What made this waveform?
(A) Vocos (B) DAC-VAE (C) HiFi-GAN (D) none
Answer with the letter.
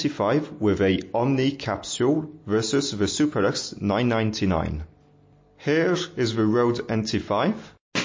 D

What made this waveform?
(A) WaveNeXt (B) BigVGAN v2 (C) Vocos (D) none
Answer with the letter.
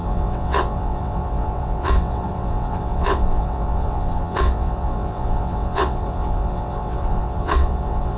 A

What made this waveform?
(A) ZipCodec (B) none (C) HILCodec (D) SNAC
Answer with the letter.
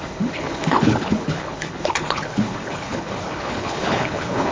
C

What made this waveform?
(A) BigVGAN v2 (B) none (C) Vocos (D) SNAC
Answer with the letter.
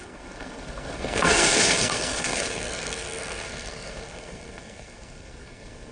D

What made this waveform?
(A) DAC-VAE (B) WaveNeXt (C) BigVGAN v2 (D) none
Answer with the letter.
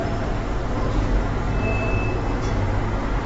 D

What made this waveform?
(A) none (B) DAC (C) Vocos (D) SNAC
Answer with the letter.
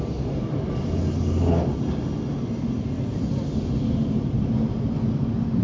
A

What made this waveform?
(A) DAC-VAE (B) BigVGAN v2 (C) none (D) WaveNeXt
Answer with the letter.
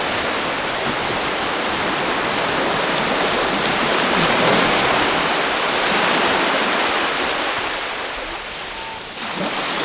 C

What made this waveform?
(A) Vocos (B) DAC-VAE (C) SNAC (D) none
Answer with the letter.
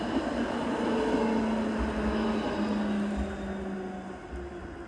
D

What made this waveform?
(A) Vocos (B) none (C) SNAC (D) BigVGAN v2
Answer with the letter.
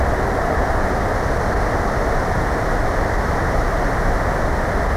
B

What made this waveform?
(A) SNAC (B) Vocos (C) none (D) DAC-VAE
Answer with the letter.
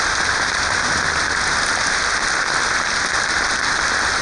C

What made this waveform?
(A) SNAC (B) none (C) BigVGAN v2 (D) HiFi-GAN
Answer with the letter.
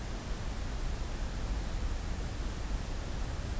B